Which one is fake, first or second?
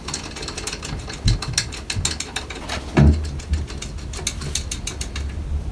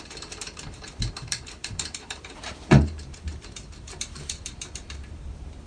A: second